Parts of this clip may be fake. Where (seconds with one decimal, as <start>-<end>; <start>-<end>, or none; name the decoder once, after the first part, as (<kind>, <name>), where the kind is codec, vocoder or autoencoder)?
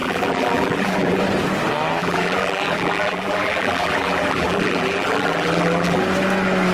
0.0-1.2 (vocoder, BigVGAN v2); 2.0-6.0